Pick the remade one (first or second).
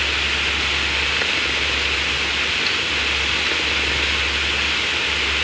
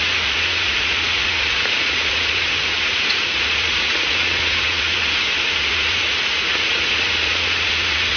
second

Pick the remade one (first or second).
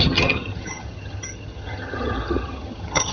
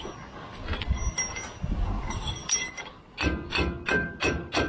first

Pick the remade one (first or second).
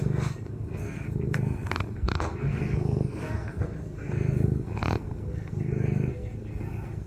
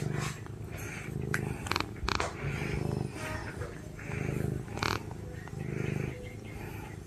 first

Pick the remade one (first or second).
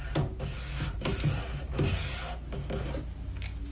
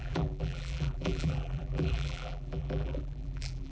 second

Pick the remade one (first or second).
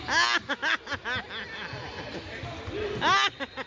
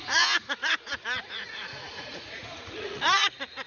second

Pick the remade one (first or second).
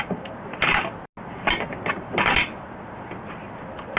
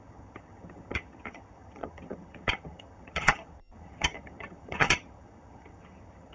second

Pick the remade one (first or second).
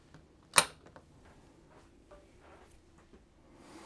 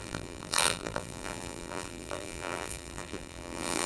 second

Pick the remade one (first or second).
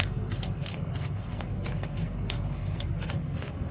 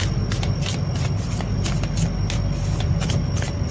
first